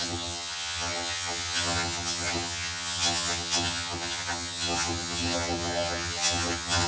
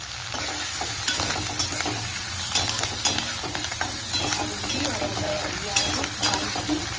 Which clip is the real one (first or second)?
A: second